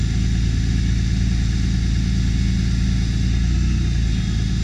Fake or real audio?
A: real